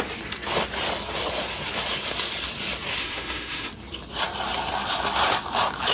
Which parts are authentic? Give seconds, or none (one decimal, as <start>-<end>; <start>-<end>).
0.0-3.0; 3.7-5.9

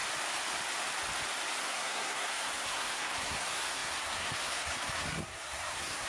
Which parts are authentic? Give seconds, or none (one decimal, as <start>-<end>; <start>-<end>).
0.0-1.6